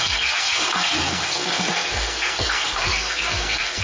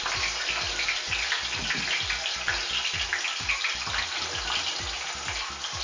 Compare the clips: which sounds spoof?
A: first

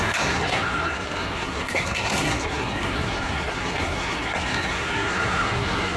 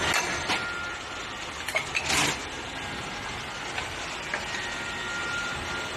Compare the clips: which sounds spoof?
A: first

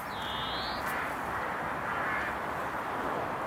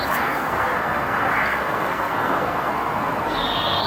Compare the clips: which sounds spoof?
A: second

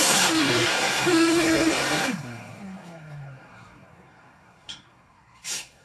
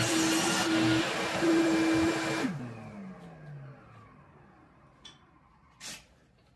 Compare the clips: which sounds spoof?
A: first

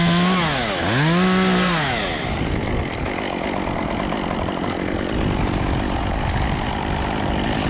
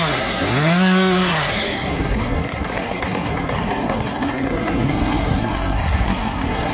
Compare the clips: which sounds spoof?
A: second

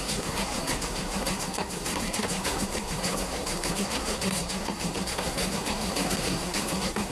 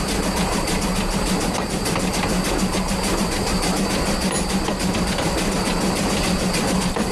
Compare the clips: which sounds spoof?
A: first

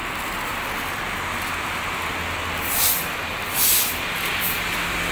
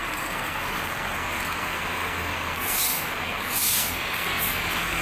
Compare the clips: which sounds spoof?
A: second